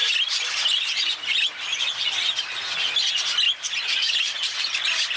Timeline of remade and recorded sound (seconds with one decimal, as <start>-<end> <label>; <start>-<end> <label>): 0.0-5.2 recorded